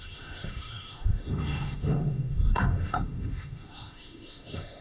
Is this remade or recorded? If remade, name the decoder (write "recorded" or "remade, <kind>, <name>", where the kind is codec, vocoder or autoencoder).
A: remade, autoencoder, DAC-VAE